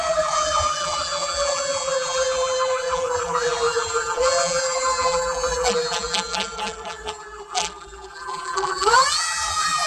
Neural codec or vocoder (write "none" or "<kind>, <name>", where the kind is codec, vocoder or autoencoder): vocoder, BigVGAN v2